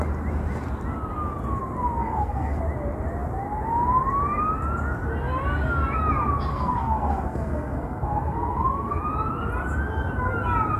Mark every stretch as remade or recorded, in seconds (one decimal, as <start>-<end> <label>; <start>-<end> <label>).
0.0-2.0 recorded; 2.0-2.6 remade; 2.6-6.5 recorded; 6.5-9.0 remade; 9.0-10.8 recorded